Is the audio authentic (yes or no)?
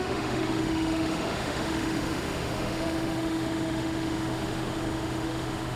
no